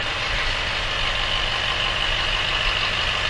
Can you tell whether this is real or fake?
real